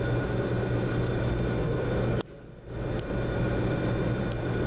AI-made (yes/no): no